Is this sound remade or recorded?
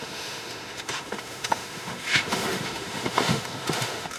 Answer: remade